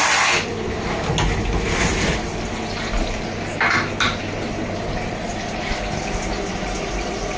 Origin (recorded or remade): recorded